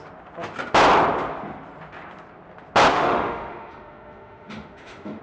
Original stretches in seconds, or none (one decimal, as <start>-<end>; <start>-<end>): 0.0-2.9